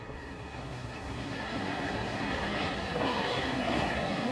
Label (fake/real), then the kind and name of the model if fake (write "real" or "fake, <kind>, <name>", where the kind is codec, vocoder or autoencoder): fake, codec, SNAC